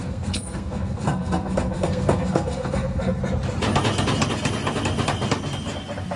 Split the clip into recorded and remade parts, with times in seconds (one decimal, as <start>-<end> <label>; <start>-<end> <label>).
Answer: 0.0-3.2 remade; 3.2-6.2 recorded

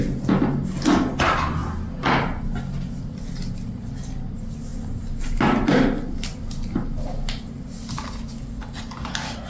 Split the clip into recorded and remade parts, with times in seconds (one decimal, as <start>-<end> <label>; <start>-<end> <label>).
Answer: 0.0-9.5 recorded

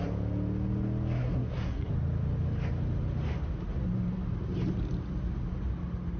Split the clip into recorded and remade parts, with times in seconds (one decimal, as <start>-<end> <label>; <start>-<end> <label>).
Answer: 0.0-1.2 recorded; 1.2-1.9 remade; 1.9-6.2 recorded

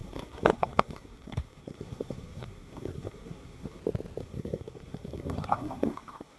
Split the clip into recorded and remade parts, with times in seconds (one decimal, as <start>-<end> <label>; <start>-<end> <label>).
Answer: 0.0-3.8 remade; 3.8-4.2 recorded; 4.2-6.4 remade

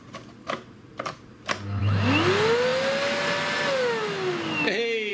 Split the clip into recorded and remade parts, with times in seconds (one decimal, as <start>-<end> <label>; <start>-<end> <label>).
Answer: 0.0-5.1 recorded

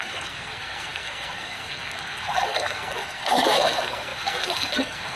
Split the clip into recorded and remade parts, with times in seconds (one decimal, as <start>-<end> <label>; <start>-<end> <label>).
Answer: 0.0-5.2 remade

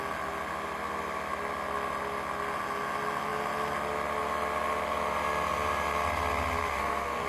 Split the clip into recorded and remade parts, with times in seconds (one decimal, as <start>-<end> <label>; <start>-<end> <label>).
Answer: 0.0-6.6 recorded; 6.6-7.3 remade

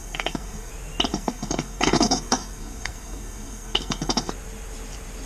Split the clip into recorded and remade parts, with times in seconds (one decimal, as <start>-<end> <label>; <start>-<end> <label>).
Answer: 0.0-0.7 remade; 0.7-1.1 recorded; 1.1-4.3 remade; 4.3-5.3 recorded